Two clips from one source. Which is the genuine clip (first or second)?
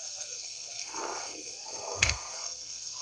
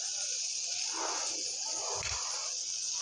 second